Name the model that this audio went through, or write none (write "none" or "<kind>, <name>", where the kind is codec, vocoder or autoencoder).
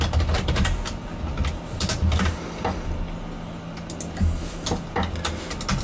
none